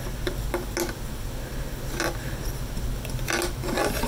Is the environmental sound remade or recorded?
recorded